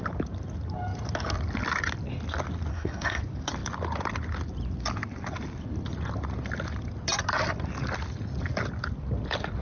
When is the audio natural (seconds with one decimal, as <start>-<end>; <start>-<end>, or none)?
0.0-2.7; 3.2-9.6